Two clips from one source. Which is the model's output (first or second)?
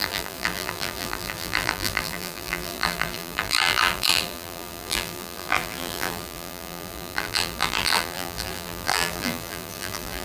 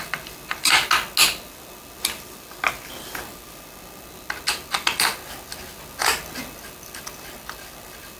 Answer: first